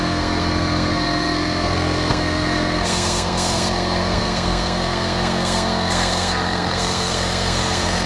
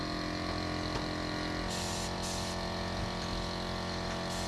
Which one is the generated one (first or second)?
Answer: first